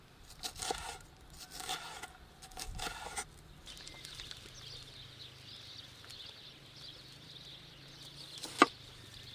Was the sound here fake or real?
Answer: real